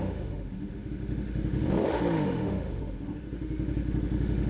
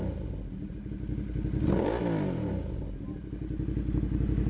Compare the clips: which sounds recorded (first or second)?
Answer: second